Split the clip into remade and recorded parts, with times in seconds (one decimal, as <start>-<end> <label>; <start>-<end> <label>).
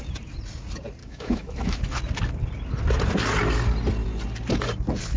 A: 0.0-1.0 recorded; 1.0-1.8 remade; 1.8-5.2 recorded